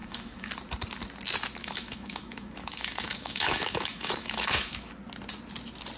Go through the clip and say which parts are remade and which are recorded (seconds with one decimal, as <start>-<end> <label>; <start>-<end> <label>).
0.0-0.5 remade; 0.5-1.6 recorded; 1.6-4.9 remade; 4.9-6.0 recorded

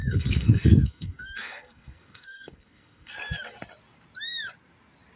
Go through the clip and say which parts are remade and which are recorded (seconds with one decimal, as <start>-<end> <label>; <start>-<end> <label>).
0.0-3.1 remade; 3.1-5.2 recorded

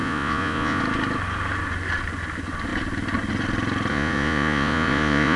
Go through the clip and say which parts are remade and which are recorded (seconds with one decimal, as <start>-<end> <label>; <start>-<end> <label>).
0.0-0.8 remade; 0.8-3.9 recorded; 3.9-5.4 remade